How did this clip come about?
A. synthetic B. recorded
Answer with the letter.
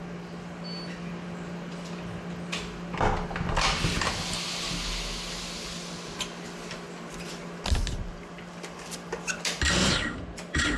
B